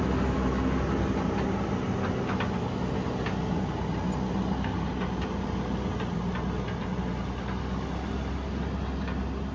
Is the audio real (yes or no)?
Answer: yes